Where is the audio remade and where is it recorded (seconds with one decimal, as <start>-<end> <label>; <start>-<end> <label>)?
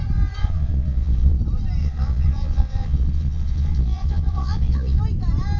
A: 0.0-0.4 recorded; 0.4-1.4 remade; 1.4-1.8 recorded; 1.8-5.0 remade; 5.0-5.6 recorded